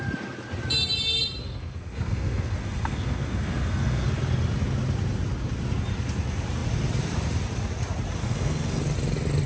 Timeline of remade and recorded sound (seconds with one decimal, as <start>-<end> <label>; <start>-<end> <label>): 0.0-1.4 recorded; 1.4-4.2 remade; 4.2-8.2 recorded; 8.2-8.8 remade; 8.8-9.5 recorded